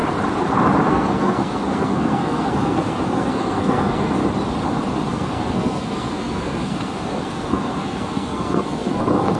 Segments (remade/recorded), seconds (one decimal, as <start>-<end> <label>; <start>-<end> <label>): 0.0-0.9 recorded; 0.9-4.2 remade; 4.2-5.1 recorded; 5.1-9.4 remade